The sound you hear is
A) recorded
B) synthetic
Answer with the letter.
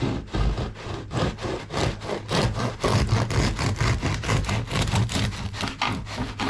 A